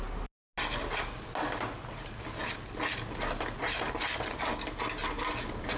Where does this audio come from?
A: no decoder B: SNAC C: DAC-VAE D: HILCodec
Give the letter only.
A